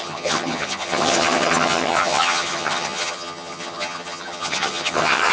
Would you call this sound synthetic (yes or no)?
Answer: yes